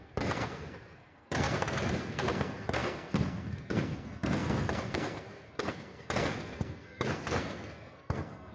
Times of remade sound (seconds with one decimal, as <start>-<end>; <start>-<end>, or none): 0.0-8.5